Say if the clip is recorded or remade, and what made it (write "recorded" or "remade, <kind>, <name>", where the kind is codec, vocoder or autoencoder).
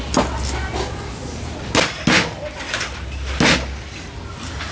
recorded